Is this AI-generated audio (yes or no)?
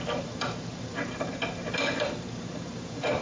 yes